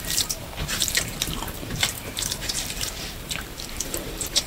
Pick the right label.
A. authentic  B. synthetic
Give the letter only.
B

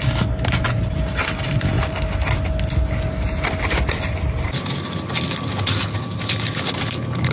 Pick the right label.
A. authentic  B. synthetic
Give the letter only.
A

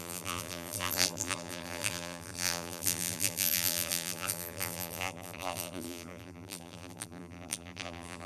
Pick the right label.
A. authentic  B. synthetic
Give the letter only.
B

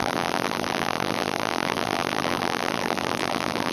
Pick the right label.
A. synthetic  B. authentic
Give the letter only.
A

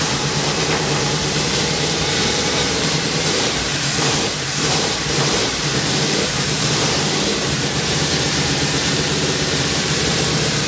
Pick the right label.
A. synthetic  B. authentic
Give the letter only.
A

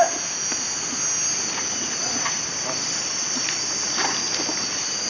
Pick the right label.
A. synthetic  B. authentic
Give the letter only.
B